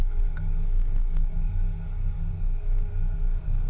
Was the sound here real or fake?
fake